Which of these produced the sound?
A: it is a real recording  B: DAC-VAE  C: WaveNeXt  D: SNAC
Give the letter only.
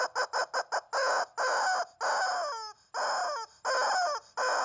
A